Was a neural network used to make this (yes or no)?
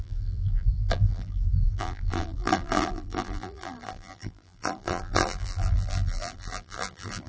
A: yes